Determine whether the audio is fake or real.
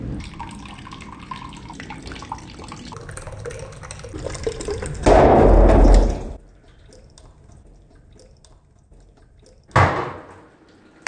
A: real